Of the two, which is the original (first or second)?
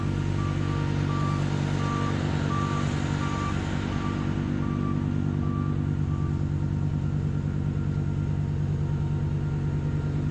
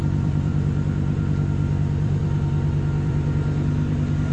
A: first